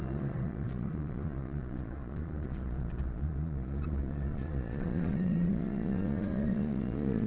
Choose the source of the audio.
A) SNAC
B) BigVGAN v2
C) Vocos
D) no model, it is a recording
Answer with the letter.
C